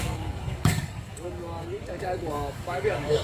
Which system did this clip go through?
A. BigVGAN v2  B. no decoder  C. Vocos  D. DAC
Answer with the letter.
D